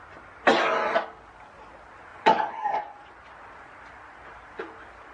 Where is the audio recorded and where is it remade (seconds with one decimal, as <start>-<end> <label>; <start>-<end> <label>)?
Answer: 0.0-2.1 recorded; 2.1-3.1 remade; 3.1-5.1 recorded